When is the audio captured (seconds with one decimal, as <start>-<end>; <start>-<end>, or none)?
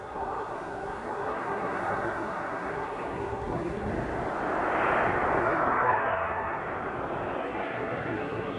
3.9-5.4; 6.6-7.4